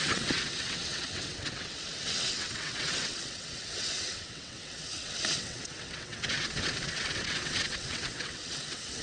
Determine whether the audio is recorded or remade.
remade